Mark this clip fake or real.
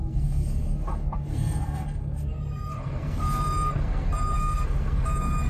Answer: fake